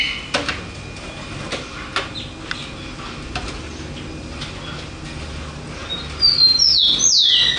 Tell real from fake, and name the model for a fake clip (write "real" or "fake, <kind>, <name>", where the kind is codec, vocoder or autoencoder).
real